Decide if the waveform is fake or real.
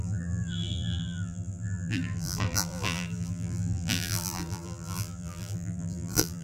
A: fake